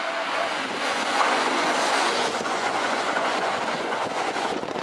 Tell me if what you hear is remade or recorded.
remade